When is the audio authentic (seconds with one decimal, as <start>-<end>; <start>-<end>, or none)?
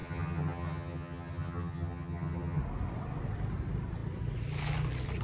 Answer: 2.6-5.2